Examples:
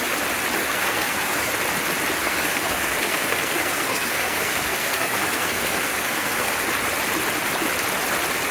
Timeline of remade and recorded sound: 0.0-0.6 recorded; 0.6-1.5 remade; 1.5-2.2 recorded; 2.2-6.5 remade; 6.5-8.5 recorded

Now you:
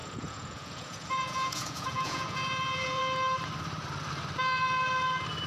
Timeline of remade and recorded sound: 0.0-3.0 remade; 3.0-5.5 recorded

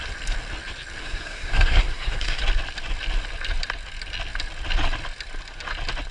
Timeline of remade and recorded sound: 0.0-1.0 recorded; 1.0-2.4 remade; 2.4-6.1 recorded

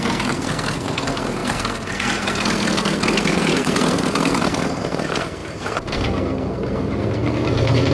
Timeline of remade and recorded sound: 0.0-7.9 remade

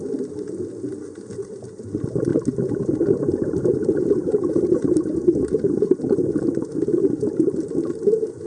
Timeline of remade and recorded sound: 0.0-2.3 recorded; 2.3-6.3 remade; 6.3-8.5 recorded

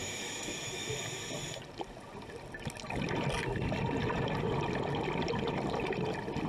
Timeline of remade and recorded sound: 0.0-0.9 remade; 0.9-6.5 recorded